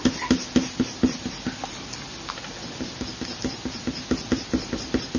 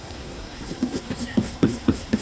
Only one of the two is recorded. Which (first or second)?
first